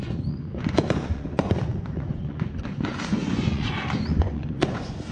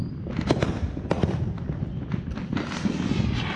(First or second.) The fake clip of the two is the first